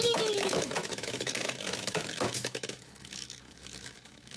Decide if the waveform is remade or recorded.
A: remade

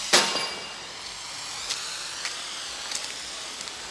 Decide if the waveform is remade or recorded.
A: recorded